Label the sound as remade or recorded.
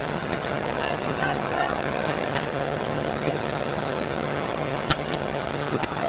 remade